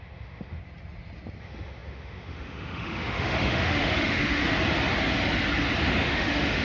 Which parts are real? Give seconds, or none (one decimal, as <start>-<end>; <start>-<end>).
0.6-1.4; 4.4-5.8

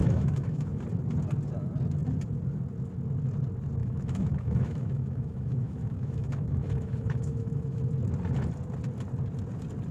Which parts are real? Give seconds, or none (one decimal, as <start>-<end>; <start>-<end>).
0.8-3.8; 7.8-9.9

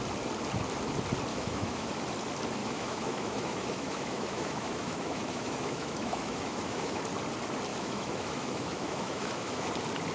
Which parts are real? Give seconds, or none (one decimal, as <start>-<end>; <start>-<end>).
0.0-1.3; 1.9-2.6; 7.0-7.7; 9.7-10.1

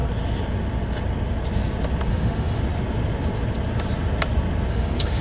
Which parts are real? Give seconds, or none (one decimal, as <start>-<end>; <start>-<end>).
0.0-2.1; 2.6-4.7

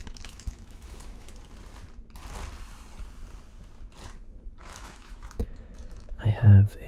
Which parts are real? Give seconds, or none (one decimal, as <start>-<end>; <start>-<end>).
1.3-4.6

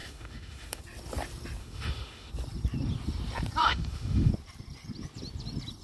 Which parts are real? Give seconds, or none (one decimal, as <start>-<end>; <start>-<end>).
0.8-1.6; 2.3-3.6; 4.3-5.8

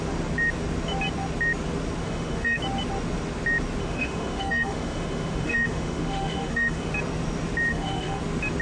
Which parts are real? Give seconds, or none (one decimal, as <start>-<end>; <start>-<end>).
0.0-2.0; 2.6-3.8; 6.9-7.7; 8.2-8.6